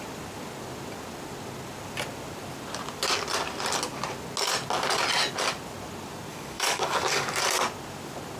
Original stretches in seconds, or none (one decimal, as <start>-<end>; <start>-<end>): 0.0-6.3; 7.3-8.4